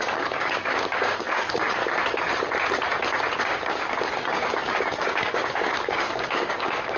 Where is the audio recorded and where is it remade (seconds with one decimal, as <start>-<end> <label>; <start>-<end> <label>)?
0.0-1.8 remade; 1.8-3.4 recorded; 3.4-7.0 remade